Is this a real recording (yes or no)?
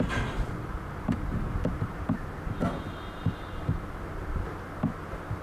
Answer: yes